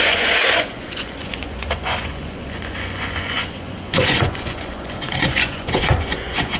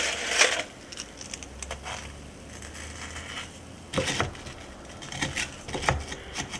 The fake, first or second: first